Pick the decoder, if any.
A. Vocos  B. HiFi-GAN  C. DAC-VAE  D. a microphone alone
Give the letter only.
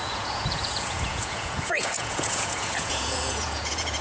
A